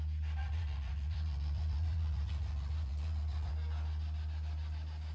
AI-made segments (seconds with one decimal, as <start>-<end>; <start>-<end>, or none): 0.4-3.5

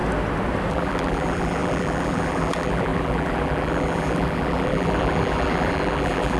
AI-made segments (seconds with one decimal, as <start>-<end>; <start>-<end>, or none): 0.7-6.4

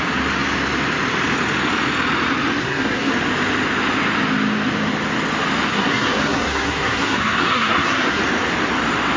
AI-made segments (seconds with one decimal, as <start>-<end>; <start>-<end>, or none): 2.6-3.1; 5.7-8.2

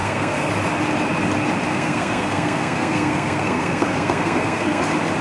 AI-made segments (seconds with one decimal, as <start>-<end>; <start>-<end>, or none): 0.0-0.5; 1.7-4.8